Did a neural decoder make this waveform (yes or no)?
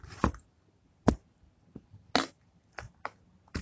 no